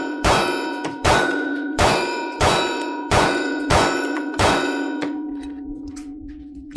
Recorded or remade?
remade